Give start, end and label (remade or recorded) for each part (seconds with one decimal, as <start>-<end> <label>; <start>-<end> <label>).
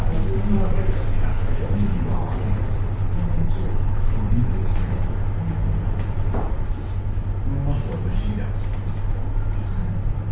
0.0-1.3 recorded; 1.3-5.1 remade; 5.1-10.3 recorded